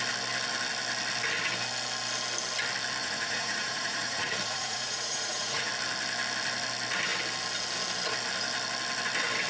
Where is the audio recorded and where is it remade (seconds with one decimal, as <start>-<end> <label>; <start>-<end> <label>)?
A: 0.0-3.0 recorded; 3.0-5.7 remade; 5.7-9.5 recorded